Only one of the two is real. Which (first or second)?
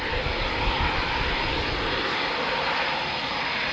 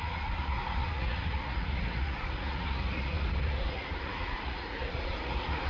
first